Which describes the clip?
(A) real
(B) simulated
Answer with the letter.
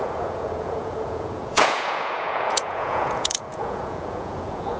B